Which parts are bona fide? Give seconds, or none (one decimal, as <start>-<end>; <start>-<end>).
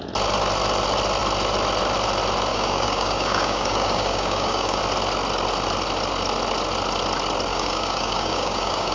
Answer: 0.0-2.5; 4.8-7.5